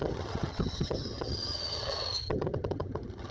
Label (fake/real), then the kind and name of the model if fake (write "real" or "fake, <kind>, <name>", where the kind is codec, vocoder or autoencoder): fake, vocoder, HiFi-GAN